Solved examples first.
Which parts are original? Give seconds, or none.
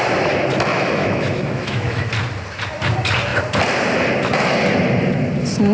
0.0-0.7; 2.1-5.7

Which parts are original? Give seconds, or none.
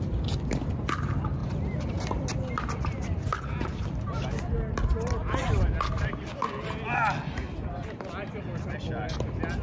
0.0-9.6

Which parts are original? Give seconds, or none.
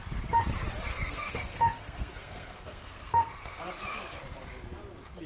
0.0-0.9; 3.6-5.3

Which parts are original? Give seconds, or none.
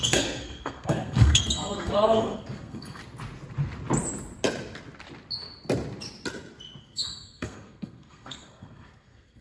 3.0-6.8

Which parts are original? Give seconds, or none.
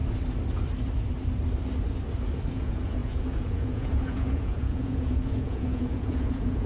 0.0-2.5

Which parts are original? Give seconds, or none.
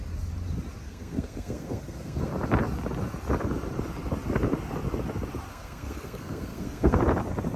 0.0-0.8; 2.3-5.5; 7.0-7.6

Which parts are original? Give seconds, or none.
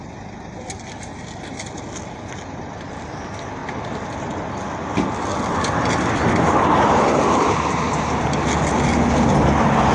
0.0-9.9